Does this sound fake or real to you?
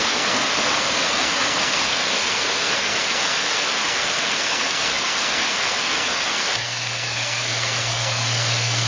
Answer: fake